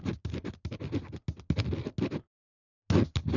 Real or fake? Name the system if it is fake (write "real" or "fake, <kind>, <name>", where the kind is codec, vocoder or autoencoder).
real